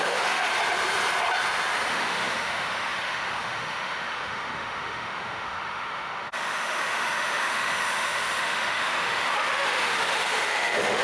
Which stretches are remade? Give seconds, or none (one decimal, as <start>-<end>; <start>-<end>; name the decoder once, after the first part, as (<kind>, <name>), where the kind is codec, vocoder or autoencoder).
0.0-0.5 (autoencoder, DAC-VAE); 1.9-11.0